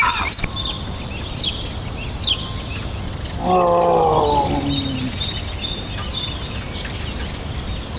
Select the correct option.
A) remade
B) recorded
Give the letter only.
B